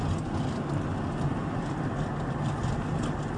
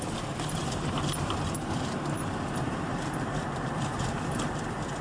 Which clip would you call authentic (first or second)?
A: first